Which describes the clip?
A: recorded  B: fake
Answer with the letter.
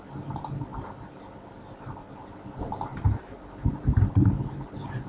A